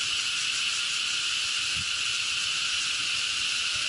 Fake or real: real